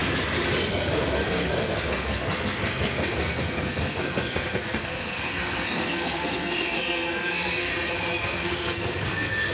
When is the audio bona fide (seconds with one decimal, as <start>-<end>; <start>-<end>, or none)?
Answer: 0.0-0.7; 7.7-8.2